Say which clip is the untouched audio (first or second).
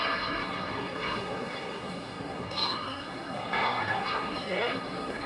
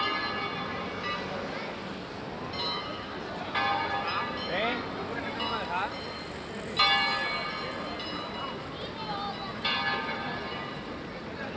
second